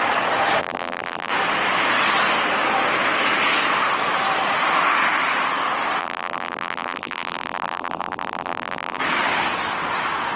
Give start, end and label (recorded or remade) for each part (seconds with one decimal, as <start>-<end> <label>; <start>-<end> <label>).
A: 0.0-0.6 recorded; 0.6-1.3 remade; 1.3-6.0 recorded; 6.0-9.0 remade; 9.0-10.4 recorded